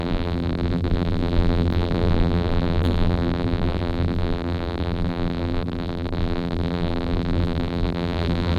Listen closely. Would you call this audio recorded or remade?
remade